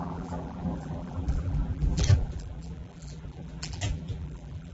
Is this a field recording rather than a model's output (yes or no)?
no